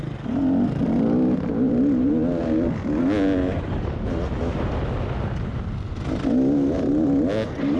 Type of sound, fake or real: real